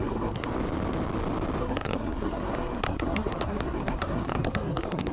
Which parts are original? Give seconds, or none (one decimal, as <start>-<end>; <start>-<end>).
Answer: 0.5-1.6